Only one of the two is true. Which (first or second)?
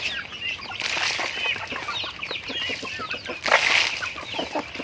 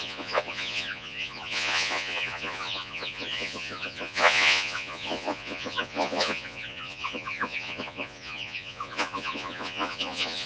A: first